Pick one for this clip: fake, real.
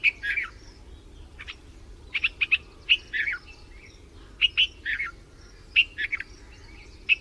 real